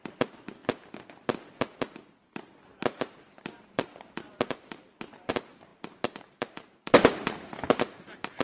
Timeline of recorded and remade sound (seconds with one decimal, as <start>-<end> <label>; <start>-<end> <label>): 0.0-0.6 remade; 0.6-2.1 recorded; 2.1-8.4 remade